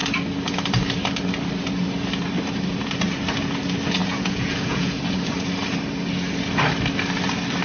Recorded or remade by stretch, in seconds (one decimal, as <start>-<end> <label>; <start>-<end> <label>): 0.0-4.0 recorded; 4.0-5.0 remade; 5.0-7.6 recorded